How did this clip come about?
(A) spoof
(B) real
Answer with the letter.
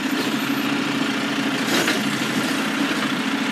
B